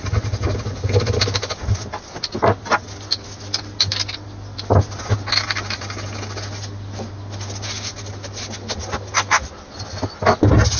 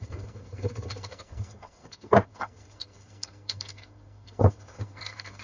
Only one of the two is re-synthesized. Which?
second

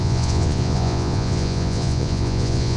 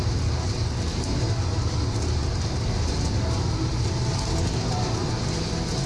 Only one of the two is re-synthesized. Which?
first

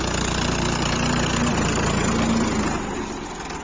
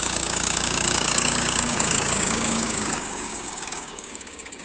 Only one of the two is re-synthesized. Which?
second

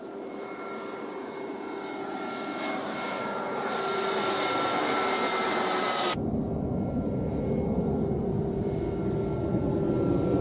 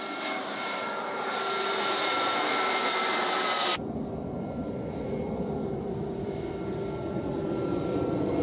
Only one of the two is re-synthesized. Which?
second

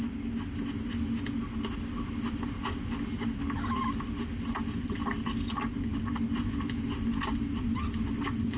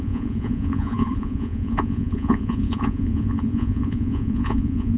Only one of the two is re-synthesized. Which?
second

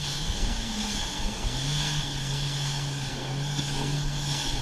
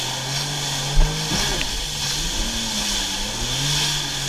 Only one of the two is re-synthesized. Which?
first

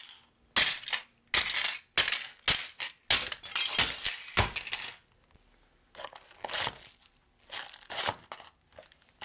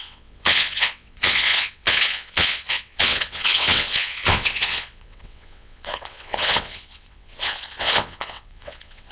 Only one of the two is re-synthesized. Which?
second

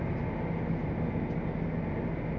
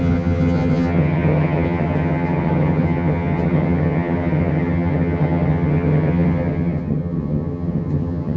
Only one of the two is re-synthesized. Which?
second